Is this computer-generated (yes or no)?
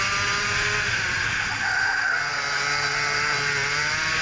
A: no